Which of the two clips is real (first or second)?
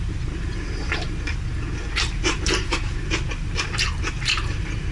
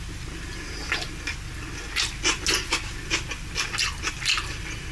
second